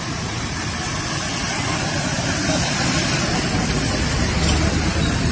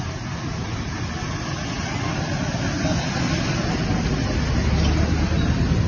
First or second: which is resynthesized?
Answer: first